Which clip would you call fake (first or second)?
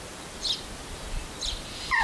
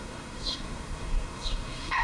second